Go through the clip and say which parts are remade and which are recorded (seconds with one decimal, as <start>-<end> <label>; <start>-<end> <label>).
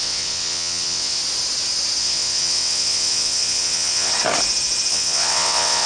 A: 0.0-1.2 remade; 1.2-2.0 recorded; 2.0-4.1 remade; 4.1-4.9 recorded; 4.9-5.9 remade